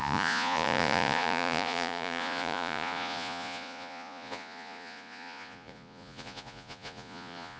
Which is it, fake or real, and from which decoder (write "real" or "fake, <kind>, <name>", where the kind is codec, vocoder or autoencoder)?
fake, vocoder, Vocos